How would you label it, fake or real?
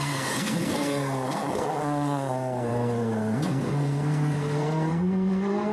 fake